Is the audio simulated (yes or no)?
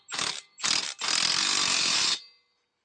no